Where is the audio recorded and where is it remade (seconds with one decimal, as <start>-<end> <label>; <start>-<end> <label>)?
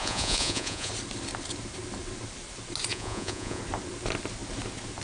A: 0.0-0.9 remade; 0.9-2.9 recorded; 2.9-3.6 remade; 3.6-5.0 recorded